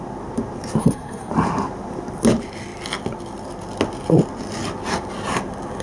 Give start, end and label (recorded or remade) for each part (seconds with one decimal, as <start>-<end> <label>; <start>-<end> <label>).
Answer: 0.0-0.8 recorded; 0.8-1.3 remade; 1.3-5.8 recorded

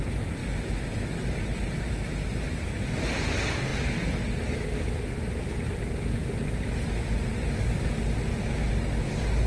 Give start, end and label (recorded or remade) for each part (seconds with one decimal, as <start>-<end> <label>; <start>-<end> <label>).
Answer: 0.0-9.5 recorded

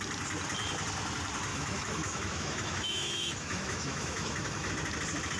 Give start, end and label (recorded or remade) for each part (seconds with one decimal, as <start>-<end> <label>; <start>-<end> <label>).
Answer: 0.0-1.5 recorded; 1.5-4.7 remade; 4.7-5.4 recorded

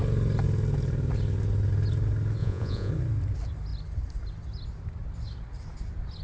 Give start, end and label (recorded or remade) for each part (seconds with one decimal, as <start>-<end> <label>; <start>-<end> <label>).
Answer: 0.0-2.4 recorded; 2.4-2.9 remade; 2.9-6.2 recorded

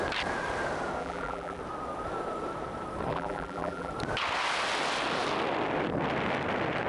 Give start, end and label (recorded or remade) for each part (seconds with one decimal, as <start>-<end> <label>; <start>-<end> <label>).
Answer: 0.0-1.0 recorded; 1.0-1.6 remade; 1.6-3.1 recorded; 3.1-3.9 remade; 3.9-6.9 recorded